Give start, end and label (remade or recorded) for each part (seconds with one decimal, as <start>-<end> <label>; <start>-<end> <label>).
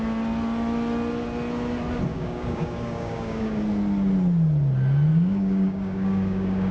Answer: 0.0-2.1 recorded; 2.1-3.6 remade; 3.6-5.1 recorded; 5.1-6.7 remade